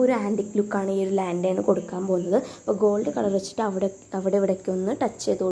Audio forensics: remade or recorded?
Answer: recorded